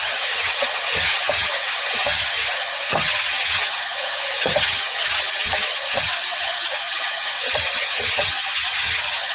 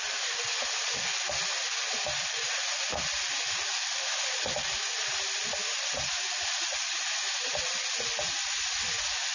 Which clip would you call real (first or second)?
second